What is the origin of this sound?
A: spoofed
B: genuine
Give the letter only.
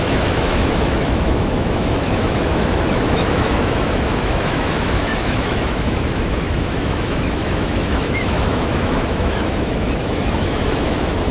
A